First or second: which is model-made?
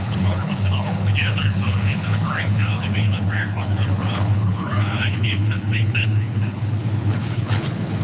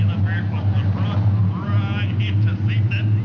first